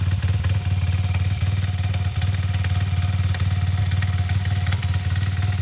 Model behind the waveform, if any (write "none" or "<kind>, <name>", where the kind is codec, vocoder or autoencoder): none